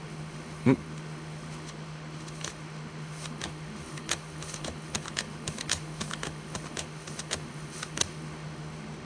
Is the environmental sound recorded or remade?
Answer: remade